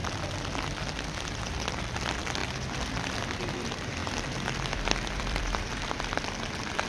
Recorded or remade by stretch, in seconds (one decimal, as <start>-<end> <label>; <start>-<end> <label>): 0.0-1.4 recorded; 1.4-2.4 remade; 2.4-3.5 recorded; 3.5-6.9 remade